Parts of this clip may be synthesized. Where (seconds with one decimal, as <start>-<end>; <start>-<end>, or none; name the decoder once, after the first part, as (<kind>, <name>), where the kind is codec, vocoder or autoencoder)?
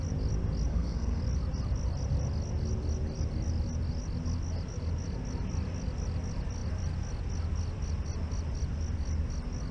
0.7-1.2 (codec, SNAC)